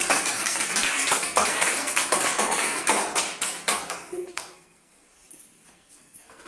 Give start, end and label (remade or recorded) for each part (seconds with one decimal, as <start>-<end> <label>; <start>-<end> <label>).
0.0-6.5 remade